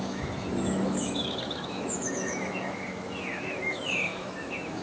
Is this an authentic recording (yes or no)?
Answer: no